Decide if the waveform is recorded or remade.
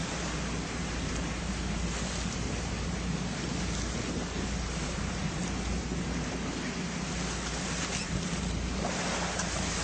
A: recorded